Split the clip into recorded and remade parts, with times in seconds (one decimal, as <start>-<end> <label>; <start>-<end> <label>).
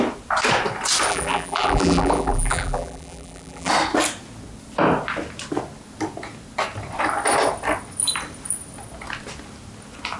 0.0-1.1 recorded; 1.1-3.7 remade; 3.7-10.2 recorded